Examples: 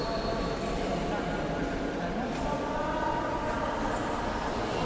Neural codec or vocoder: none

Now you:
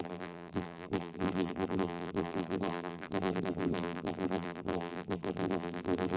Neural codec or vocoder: vocoder, BigVGAN v2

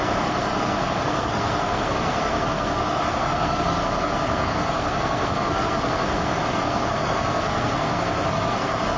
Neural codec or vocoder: codec, SNAC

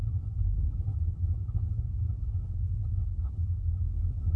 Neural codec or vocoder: codec, HILCodec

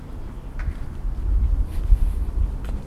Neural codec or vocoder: none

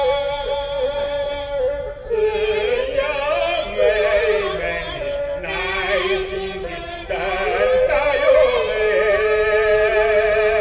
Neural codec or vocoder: none